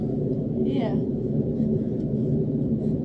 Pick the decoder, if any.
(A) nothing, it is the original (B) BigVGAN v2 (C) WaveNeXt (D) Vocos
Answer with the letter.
A